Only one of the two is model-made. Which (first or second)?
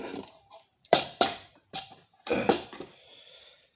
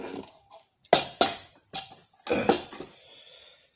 first